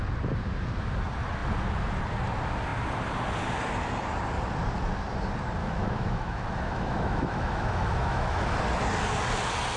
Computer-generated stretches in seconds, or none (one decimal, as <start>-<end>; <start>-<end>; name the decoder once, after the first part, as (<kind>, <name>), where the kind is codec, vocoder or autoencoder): 5.6-8.6 (autoencoder, DAC-VAE)